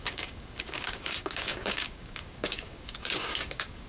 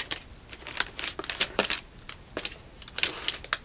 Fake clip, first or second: first